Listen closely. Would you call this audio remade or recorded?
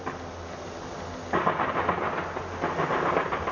recorded